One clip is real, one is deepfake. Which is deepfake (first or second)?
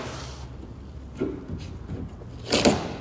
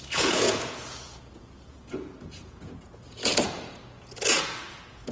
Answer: second